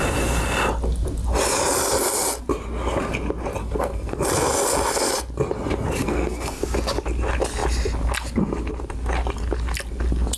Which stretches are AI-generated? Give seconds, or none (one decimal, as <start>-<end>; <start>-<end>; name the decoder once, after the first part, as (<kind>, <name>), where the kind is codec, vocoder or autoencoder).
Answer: 3.6-4.2 (codec, SNAC); 6.0-6.6